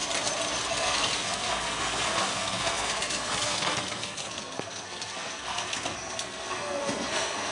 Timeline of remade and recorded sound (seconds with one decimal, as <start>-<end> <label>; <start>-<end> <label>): 0.0-0.7 recorded; 0.7-7.5 remade